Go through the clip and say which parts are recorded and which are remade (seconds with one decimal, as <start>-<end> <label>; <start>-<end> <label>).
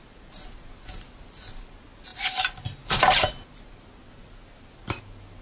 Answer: 0.0-5.4 recorded